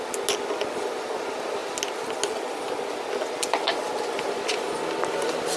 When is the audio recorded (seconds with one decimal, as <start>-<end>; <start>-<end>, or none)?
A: 0.0-5.6